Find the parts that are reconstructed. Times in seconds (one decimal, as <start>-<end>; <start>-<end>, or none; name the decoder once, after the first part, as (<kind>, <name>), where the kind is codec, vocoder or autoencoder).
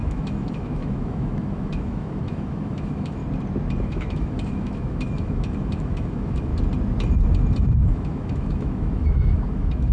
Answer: 0.0-3.2 (autoencoder, DAC-VAE); 3.8-6.5; 7.8-9.9